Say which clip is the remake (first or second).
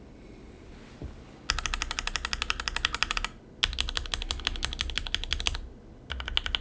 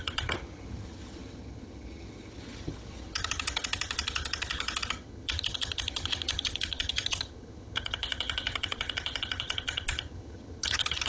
second